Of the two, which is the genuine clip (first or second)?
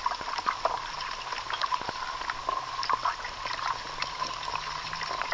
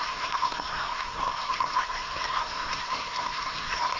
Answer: first